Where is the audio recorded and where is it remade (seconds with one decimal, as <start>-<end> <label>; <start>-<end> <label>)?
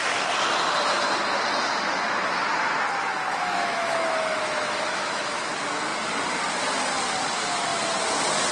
0.0-3.3 recorded; 3.3-5.5 remade; 5.5-8.5 recorded